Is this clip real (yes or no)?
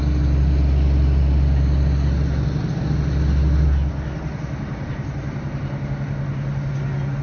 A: yes